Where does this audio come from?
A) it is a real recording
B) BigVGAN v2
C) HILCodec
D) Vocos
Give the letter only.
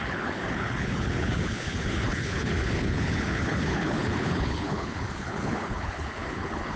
C